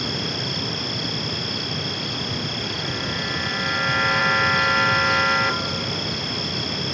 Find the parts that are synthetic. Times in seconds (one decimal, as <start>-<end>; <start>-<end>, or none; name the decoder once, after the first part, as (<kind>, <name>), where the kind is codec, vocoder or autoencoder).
none